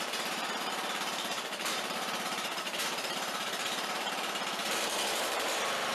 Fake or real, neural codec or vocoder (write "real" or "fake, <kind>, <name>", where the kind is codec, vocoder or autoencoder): fake, vocoder, BigVGAN v2